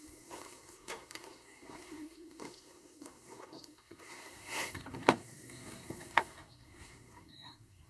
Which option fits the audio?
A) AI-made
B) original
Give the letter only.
A